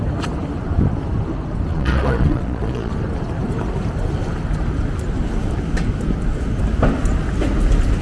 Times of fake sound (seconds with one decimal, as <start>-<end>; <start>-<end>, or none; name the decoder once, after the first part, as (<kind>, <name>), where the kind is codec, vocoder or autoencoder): 1.7-2.9 (vocoder, Vocos)